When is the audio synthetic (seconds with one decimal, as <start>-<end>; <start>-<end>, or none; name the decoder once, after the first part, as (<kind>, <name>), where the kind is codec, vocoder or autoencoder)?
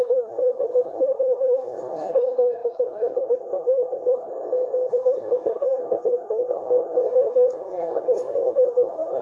0.0-4.3 (codec, SNAC); 4.9-9.2